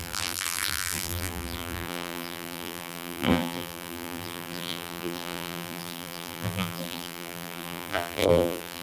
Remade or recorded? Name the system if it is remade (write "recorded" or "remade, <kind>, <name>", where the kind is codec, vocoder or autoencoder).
remade, vocoder, BigVGAN v2